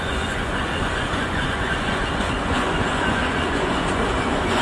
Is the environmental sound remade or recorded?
remade